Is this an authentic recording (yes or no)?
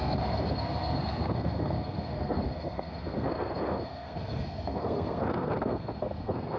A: no